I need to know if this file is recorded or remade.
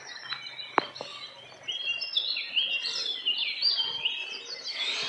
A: recorded